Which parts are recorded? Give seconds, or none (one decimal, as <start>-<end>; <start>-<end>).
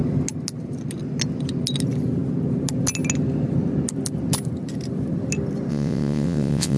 0.0-5.7